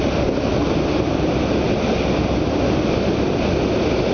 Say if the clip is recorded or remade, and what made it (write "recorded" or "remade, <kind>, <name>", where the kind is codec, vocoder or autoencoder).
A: recorded